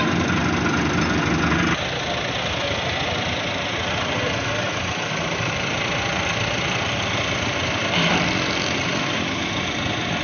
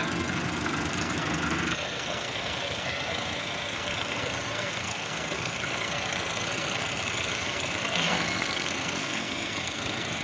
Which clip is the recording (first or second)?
first